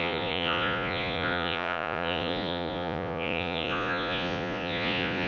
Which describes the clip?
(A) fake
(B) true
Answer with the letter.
A